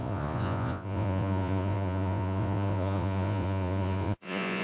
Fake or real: fake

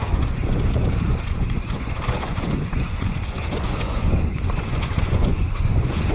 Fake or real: fake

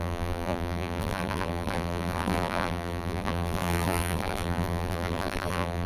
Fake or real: fake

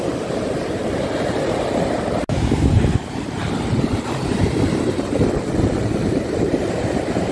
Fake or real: fake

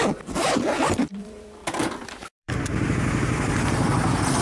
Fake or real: fake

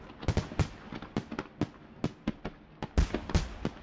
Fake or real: real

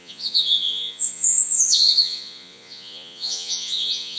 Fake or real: fake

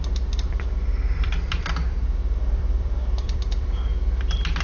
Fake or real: fake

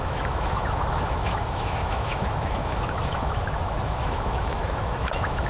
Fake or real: fake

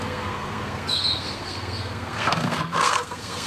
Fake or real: fake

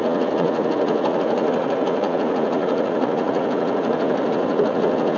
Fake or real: fake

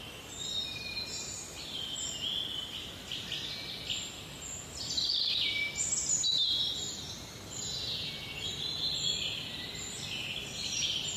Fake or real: real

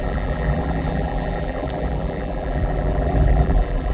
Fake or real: fake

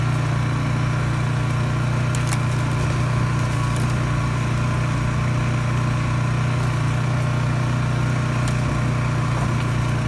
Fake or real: real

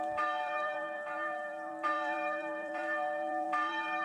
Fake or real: fake